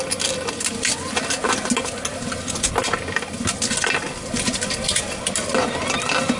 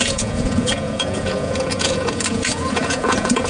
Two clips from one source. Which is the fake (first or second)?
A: second